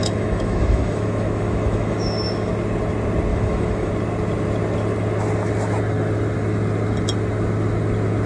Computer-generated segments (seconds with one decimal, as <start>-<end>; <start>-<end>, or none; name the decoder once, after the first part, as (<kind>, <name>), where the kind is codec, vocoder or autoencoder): 0.0-2.5 (autoencoder, DAC-VAE); 3.3-3.9